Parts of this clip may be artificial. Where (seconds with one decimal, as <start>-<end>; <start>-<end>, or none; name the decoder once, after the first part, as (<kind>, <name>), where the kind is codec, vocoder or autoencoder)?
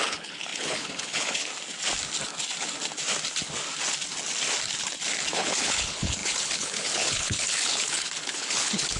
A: 0.0-1.5 (codec, HILCodec); 5.3-9.0